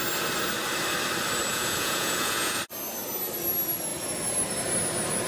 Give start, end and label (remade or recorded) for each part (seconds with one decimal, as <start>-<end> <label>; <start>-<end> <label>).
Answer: 0.0-1.5 recorded; 1.5-2.6 remade; 2.6-5.3 recorded